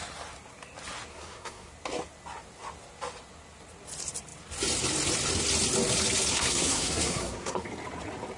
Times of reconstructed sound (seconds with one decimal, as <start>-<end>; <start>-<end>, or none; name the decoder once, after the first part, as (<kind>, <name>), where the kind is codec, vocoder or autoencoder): 1.1-1.7 (codec, SNAC); 6.3-7.7